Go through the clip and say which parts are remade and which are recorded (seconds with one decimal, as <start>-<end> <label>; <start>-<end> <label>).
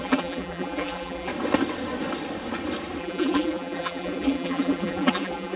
0.0-1.3 remade; 1.3-3.0 recorded; 3.0-5.6 remade